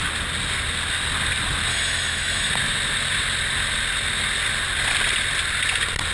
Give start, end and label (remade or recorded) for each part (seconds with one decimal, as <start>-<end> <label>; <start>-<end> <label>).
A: 0.0-1.7 recorded; 1.7-2.5 remade; 2.5-6.1 recorded